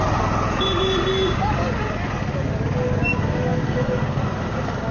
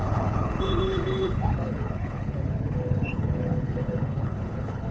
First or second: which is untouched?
first